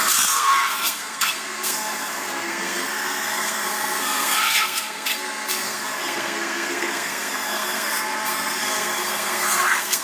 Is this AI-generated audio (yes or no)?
yes